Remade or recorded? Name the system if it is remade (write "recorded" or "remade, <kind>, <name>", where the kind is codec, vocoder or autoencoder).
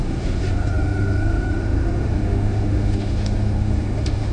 remade, autoencoder, DAC-VAE